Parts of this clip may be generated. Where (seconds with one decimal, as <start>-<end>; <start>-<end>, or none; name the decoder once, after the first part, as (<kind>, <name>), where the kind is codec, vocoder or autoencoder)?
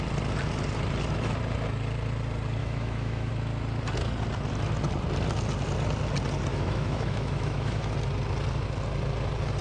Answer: 2.6-3.3 (autoencoder, DAC-VAE); 6.5-7.9